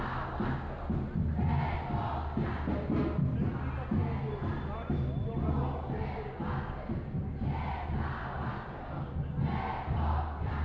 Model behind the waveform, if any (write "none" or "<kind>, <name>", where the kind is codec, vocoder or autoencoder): none